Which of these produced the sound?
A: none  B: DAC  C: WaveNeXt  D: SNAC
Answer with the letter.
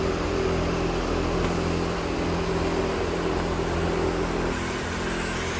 A